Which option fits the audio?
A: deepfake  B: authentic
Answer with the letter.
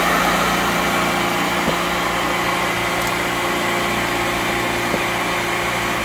B